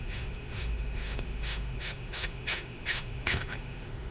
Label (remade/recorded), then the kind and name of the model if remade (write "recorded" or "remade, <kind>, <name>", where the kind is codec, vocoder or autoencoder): remade, autoencoder, DAC-VAE